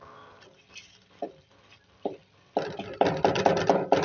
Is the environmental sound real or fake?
fake